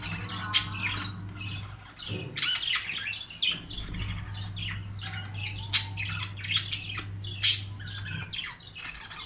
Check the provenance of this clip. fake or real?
real